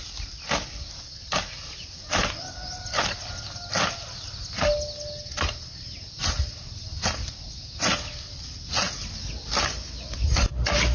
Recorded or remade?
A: recorded